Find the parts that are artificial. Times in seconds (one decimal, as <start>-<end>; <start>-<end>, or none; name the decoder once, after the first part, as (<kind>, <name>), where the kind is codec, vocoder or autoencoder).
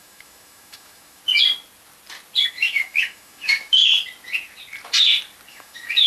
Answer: 0.0-1.2 (autoencoder, DAC-VAE); 2.5-3.8; 5.5-6.1